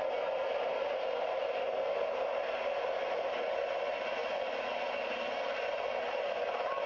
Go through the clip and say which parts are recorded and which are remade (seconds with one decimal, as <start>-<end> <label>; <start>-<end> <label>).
0.0-6.9 recorded